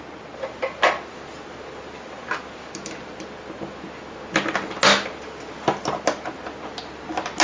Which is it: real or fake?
real